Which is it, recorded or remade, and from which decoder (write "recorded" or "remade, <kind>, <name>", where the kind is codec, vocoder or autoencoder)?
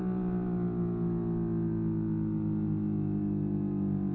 recorded